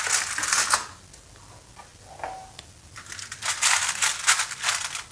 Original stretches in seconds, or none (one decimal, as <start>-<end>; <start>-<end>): 0.0-5.1